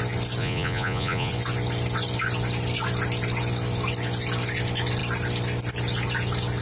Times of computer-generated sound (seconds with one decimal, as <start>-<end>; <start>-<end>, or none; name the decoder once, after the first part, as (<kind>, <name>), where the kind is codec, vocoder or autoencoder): 0.4-1.3 (vocoder, Vocos)